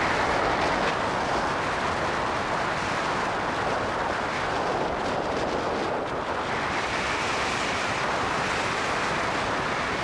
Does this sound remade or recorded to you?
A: recorded